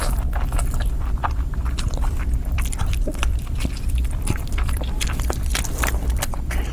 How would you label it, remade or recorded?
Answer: remade